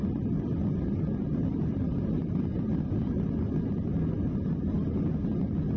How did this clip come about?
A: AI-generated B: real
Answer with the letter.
B